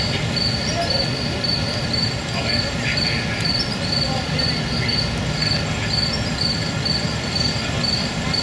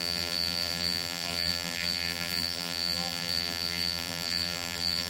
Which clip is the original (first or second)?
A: first